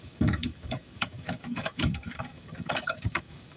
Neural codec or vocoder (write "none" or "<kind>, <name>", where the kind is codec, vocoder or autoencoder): codec, DAC